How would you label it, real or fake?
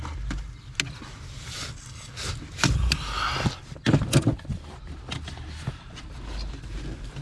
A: real